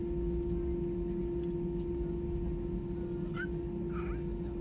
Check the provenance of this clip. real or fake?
real